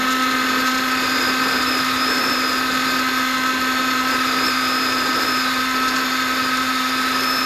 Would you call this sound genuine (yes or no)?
no